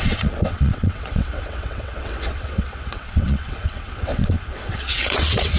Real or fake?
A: fake